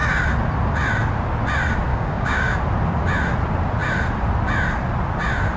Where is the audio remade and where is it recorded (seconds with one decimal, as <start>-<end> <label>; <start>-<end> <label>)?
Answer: 0.0-1.9 recorded; 1.9-2.6 remade; 2.6-5.6 recorded